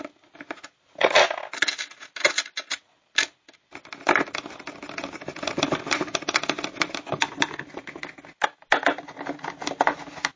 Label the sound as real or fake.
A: real